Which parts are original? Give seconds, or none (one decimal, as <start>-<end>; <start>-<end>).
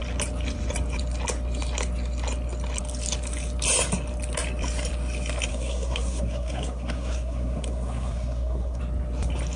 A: 0.0-5.5; 8.8-9.6